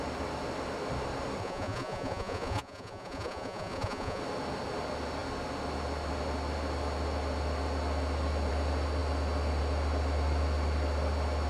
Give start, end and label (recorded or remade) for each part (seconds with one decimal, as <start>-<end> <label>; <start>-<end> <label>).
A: 0.0-1.4 recorded; 1.4-4.2 remade; 4.2-11.5 recorded